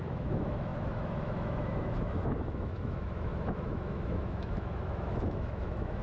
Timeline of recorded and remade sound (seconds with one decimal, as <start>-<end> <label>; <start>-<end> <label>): 0.0-6.0 remade